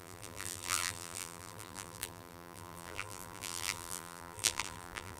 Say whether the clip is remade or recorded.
remade